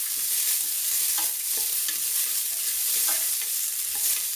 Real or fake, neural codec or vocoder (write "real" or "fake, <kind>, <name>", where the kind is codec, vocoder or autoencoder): fake, vocoder, BigVGAN v2